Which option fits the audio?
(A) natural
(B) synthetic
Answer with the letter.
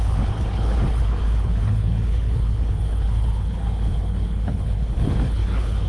B